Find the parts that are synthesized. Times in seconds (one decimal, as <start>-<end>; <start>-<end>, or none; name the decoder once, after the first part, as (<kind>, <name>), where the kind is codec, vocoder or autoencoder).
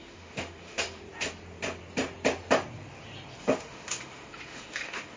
0.0-1.0 (autoencoder, DAC-VAE); 3.4-5.2